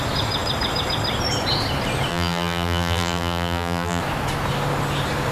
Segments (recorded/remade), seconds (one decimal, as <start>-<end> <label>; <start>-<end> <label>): 0.0-2.1 recorded; 2.1-4.0 remade; 4.0-5.3 recorded